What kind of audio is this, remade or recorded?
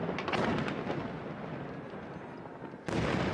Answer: recorded